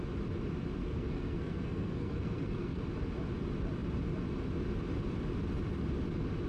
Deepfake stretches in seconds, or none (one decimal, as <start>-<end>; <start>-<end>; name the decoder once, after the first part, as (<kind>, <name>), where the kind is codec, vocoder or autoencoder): 0.8-2.8 (codec, SNAC)